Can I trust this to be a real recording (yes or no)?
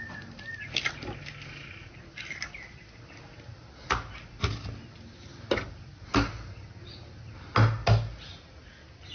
yes